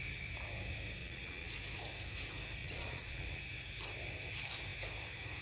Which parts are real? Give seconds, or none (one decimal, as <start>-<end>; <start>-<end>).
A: 0.0-1.0; 1.5-2.6; 3.4-5.4